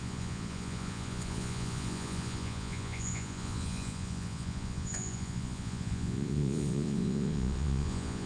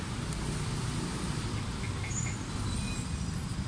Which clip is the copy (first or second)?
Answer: first